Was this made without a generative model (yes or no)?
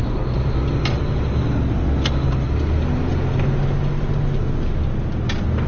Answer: yes